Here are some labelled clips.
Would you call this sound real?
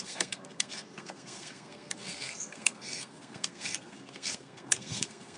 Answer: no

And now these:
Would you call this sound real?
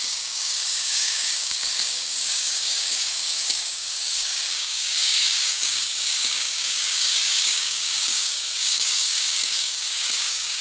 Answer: no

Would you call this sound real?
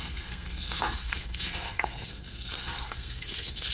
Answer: no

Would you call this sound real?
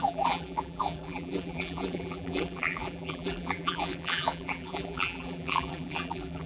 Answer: no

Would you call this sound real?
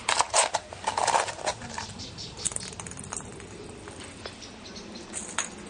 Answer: yes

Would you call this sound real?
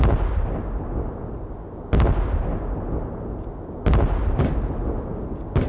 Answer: yes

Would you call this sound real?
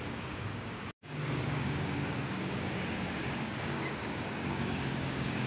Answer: no